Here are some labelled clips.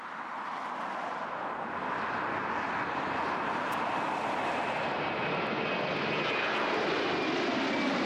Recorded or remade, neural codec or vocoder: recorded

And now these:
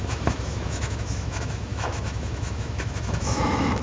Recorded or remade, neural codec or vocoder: remade, autoencoder, DAC-VAE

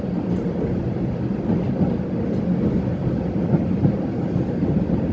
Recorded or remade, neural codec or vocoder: recorded